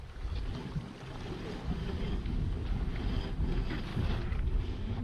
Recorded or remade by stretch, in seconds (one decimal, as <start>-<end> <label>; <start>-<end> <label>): 0.0-1.8 recorded; 1.8-2.6 remade; 2.6-3.9 recorded; 3.9-5.0 remade